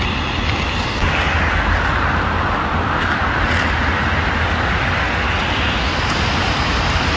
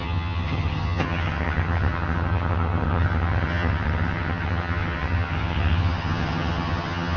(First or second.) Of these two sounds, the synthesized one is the second